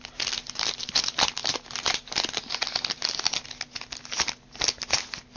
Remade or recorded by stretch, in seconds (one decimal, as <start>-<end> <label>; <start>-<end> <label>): 0.0-5.4 recorded